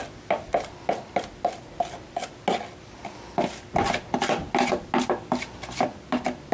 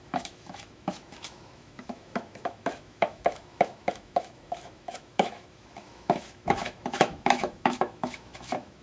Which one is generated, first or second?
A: second